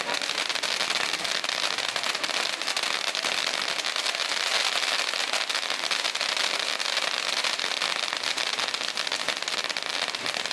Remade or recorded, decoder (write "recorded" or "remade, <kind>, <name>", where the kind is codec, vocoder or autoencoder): recorded